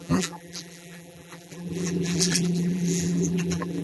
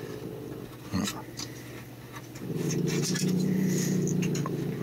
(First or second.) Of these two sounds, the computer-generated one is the first